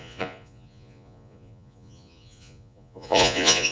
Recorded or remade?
remade